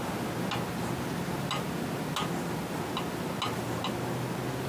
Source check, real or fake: real